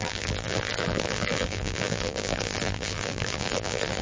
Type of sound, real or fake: fake